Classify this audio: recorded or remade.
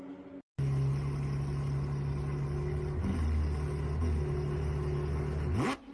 recorded